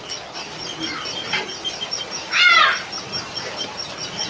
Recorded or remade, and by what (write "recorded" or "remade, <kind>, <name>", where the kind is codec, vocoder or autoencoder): recorded